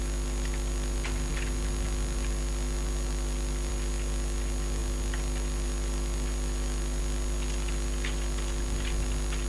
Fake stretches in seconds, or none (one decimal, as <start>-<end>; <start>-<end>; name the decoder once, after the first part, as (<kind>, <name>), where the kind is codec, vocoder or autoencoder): none